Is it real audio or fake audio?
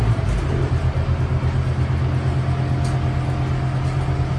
real